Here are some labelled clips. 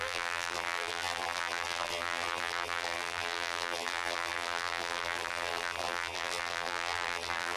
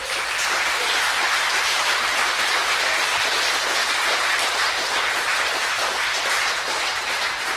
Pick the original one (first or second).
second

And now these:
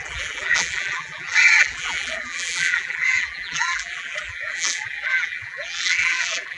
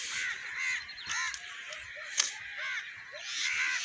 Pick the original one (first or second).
second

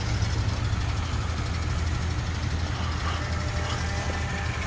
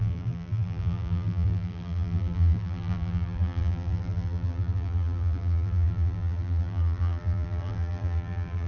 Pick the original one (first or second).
first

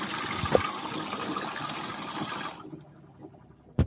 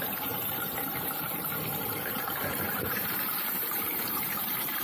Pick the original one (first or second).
first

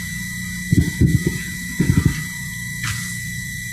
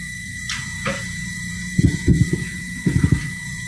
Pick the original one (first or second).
first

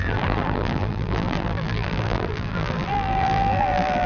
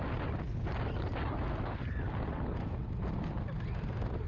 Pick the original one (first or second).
second